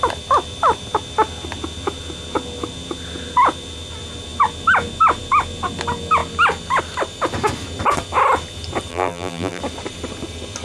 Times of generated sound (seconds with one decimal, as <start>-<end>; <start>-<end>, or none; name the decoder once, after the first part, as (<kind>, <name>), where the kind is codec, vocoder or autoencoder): 8.9-9.6 (vocoder, BigVGAN v2)